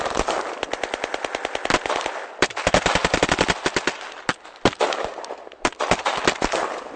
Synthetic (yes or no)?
no